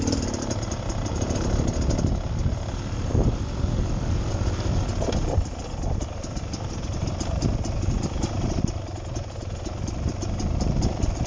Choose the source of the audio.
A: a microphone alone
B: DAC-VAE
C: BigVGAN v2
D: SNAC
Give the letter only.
A